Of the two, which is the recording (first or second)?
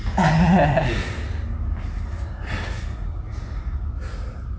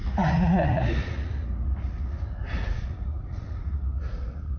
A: first